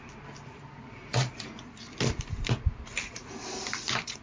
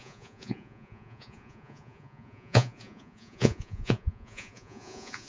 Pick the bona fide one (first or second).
first